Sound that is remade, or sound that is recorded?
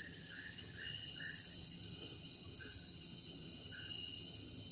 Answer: remade